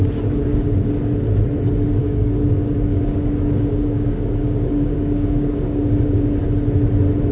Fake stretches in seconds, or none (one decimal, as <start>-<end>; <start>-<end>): 0.5-1.1; 2.0-6.4